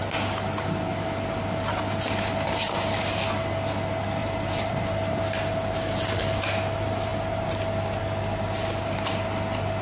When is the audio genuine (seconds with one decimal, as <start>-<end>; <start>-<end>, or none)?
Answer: 0.0-4.2; 5.5-9.8